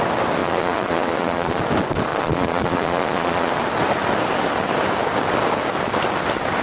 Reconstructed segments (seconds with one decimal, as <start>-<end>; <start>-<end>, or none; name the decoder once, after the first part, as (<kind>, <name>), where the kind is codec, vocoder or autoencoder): 0.4-1.6 (vocoder, Vocos); 2.1-3.5